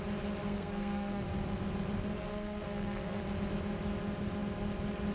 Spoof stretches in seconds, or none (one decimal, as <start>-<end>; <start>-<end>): 0.4-1.2; 2.3-3.2